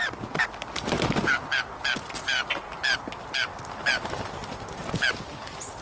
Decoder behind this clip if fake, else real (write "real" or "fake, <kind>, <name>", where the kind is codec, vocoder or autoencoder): real